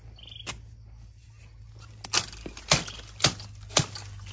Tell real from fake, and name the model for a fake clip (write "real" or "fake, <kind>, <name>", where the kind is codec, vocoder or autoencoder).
real